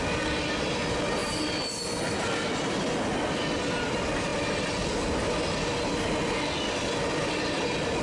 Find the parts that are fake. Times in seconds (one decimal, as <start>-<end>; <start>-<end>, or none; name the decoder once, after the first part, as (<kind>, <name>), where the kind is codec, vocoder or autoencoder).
none